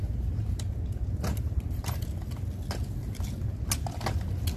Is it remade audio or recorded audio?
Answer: recorded